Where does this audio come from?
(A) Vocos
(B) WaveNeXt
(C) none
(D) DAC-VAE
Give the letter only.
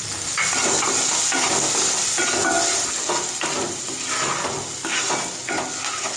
C